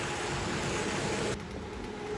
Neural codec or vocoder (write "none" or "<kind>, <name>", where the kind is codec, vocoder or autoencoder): none